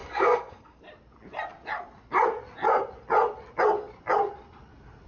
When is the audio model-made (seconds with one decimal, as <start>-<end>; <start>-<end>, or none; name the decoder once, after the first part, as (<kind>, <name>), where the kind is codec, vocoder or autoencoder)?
0.0-0.8 (codec, SNAC)